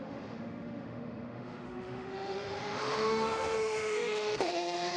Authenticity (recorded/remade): remade